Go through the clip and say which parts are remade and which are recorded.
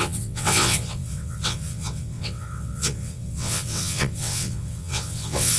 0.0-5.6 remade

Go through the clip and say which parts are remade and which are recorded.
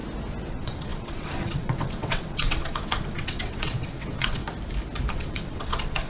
0.0-0.5 recorded; 0.5-4.4 remade; 4.4-5.1 recorded; 5.1-6.1 remade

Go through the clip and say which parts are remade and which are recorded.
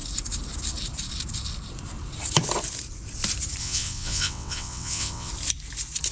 0.0-3.6 recorded; 3.6-5.3 remade; 5.3-6.1 recorded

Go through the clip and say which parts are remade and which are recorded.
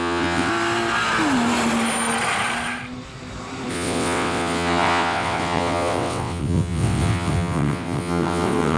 0.0-0.5 remade; 0.5-3.7 recorded; 3.7-8.8 remade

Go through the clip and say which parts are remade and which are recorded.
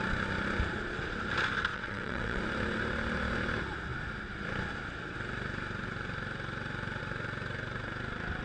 0.0-1.7 recorded; 1.7-2.4 remade; 2.4-8.4 recorded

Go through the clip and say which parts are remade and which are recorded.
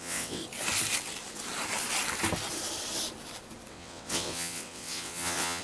0.0-0.4 remade; 0.4-3.7 recorded; 3.7-5.6 remade